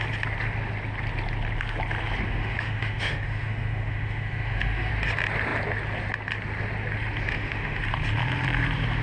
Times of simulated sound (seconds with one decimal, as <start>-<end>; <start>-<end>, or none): 2.4-4.9; 7.3-7.8